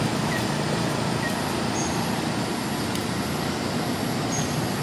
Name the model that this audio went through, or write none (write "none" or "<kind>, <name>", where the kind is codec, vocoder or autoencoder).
none